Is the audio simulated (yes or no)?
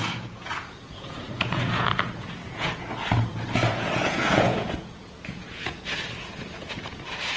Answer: yes